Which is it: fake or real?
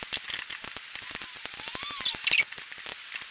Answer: real